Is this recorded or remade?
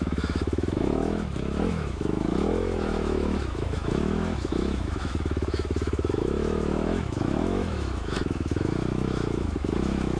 remade